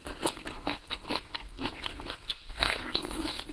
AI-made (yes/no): yes